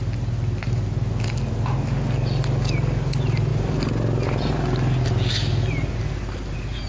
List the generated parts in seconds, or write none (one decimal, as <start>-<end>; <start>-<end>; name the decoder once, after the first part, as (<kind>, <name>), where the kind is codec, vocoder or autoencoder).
none